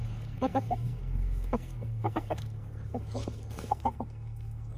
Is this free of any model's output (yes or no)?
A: no